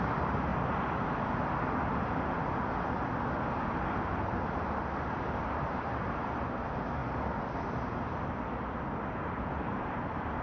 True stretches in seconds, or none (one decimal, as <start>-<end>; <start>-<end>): 0.5-4.0; 7.0-9.6